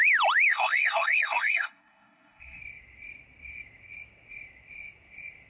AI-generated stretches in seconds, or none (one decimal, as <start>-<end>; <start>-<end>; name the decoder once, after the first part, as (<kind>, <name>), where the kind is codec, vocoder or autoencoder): 0.5-2.6 (codec, SNAC)